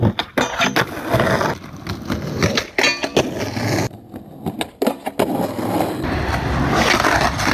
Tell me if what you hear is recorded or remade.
recorded